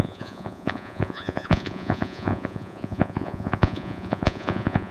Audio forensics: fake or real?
fake